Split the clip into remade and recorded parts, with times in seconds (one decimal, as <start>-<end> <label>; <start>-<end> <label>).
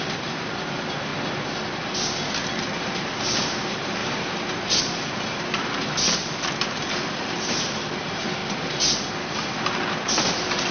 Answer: 0.0-1.1 remade; 1.1-2.6 recorded; 2.6-8.4 remade; 8.4-9.9 recorded; 9.9-10.7 remade